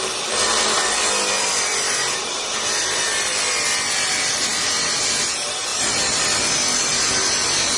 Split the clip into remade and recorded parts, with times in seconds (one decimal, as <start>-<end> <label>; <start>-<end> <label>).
0.0-7.8 recorded